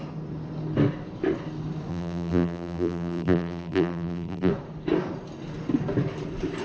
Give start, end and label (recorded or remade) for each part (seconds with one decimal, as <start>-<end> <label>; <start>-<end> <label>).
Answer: 0.0-1.9 recorded; 1.9-4.5 remade; 4.5-6.6 recorded